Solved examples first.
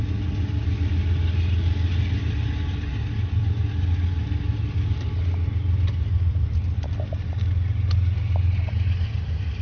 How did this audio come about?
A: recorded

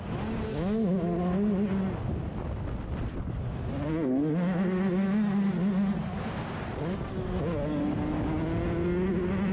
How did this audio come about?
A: recorded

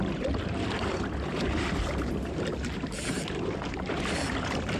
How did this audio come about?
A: remade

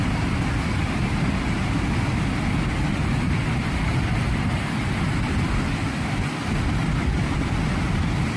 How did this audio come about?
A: recorded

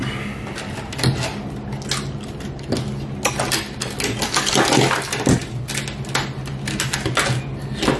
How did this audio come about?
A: recorded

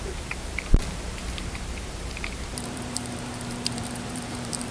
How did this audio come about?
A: remade